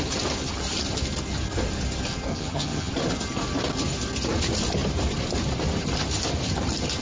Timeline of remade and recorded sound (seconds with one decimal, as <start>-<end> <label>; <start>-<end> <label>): 0.0-2.3 recorded; 2.3-2.9 remade; 2.9-7.0 recorded